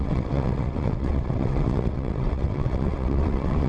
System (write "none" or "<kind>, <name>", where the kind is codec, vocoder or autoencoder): vocoder, WaveNeXt